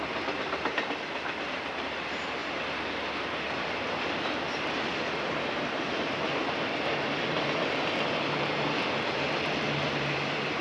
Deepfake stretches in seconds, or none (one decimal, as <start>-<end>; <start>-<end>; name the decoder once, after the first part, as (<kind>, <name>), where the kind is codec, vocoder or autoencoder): 0.0-2.4 (vocoder, BigVGAN v2); 5.0-10.6